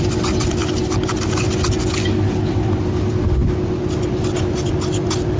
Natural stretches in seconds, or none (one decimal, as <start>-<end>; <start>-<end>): 0.0-5.4